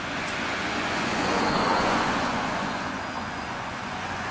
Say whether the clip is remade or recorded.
remade